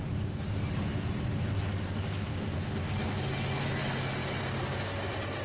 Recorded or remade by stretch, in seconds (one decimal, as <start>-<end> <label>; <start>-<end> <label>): 0.0-5.4 recorded